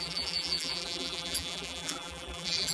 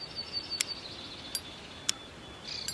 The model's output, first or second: first